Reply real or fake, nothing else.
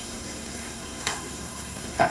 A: fake